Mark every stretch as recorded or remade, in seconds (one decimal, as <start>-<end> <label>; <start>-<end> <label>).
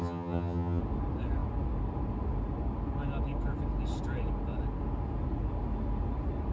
0.0-0.8 remade; 0.8-6.5 recorded